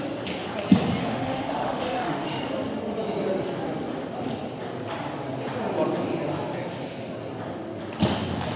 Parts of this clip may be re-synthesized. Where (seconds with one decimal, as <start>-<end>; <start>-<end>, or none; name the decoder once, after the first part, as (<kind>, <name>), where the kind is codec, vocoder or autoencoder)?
1.0-2.4 (autoencoder, DAC-VAE)